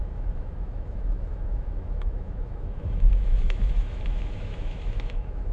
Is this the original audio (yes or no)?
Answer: no